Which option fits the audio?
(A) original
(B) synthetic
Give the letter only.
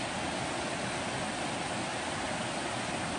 A